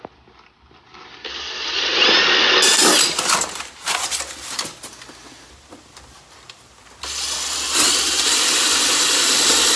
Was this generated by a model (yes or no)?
no